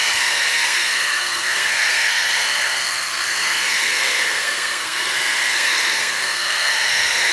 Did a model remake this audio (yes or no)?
yes